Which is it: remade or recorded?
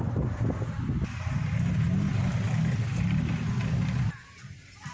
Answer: recorded